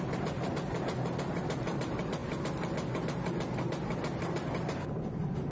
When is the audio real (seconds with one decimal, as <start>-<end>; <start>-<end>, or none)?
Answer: 0.0-5.5